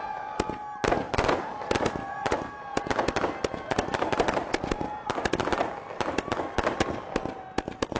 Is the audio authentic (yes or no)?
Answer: yes